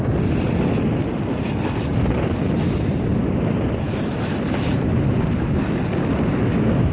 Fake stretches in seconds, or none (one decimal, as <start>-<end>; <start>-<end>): 1.9-4.1; 4.7-5.6